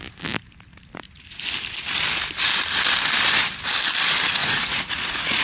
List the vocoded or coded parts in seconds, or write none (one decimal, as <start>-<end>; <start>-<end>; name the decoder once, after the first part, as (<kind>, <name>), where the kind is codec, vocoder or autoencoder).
4.4-5.4 (vocoder, Vocos)